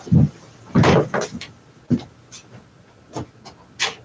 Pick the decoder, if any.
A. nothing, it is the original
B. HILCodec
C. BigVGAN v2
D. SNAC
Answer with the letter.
A